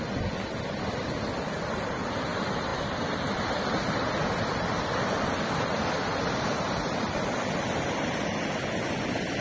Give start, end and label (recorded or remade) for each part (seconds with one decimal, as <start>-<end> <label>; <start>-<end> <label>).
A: 0.0-9.4 recorded